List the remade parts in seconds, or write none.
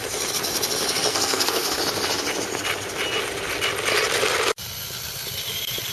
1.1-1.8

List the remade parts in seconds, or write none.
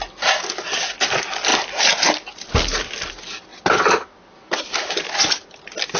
none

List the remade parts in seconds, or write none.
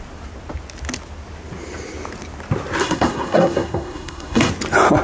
2.8-4.5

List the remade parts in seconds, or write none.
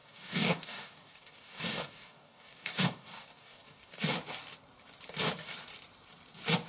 0.0-4.0